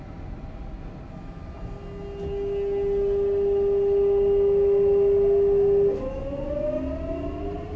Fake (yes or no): no